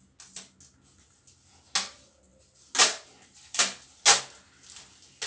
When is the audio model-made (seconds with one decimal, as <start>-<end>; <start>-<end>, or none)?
none